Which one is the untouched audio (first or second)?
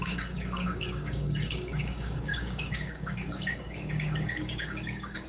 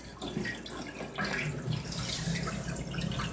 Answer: second